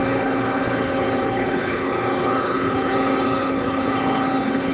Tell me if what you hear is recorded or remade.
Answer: remade